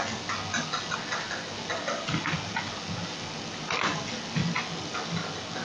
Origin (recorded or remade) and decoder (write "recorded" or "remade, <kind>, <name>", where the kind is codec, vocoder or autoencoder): recorded